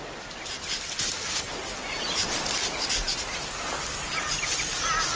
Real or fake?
real